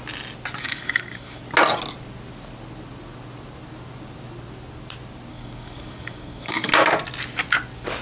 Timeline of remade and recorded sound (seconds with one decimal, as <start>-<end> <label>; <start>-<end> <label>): 0.0-0.6 recorded; 0.6-1.4 remade; 1.4-5.3 recorded; 5.3-6.7 remade; 6.7-8.0 recorded